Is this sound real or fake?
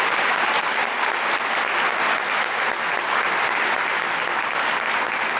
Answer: real